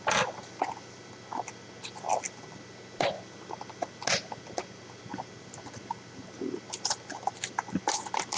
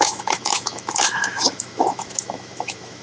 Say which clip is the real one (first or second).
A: first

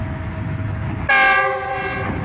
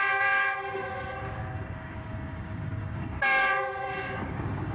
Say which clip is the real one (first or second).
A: first